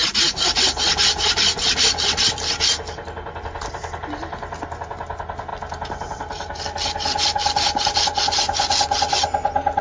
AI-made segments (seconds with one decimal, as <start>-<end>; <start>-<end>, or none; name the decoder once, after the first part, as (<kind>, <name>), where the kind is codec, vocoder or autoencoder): none